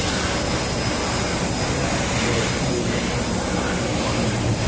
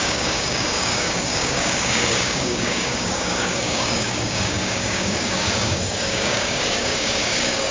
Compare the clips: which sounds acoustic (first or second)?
first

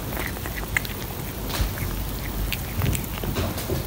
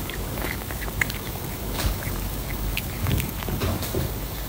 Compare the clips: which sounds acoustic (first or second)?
first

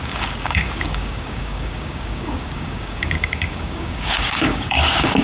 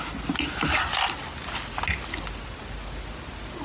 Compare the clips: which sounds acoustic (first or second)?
second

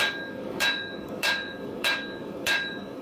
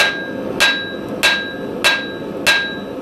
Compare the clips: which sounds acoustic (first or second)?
second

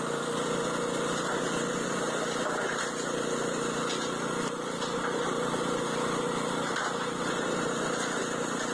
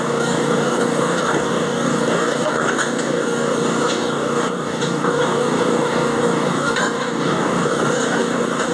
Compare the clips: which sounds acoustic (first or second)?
first